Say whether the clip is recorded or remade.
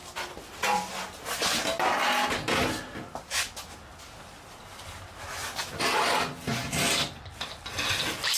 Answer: recorded